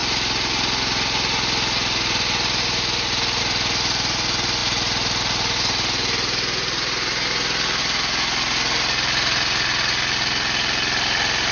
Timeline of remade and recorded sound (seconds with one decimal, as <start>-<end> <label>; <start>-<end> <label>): 0.0-11.5 recorded